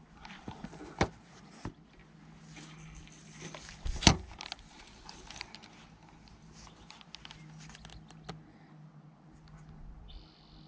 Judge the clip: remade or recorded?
recorded